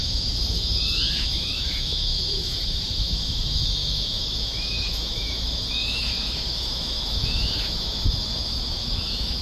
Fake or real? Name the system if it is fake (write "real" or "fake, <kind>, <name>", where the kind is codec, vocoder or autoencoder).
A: fake, autoencoder, DAC-VAE